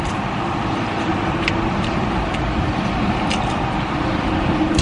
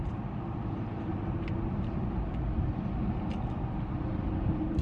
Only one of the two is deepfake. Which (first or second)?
first